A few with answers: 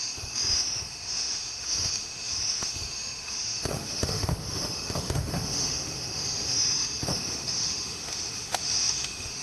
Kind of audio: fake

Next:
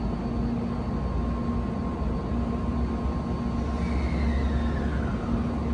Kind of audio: real